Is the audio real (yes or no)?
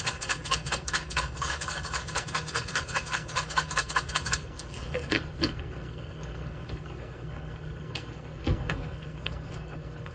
no